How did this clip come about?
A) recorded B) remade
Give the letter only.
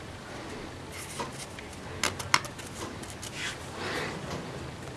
A